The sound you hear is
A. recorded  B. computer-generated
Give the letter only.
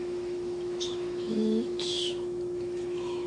B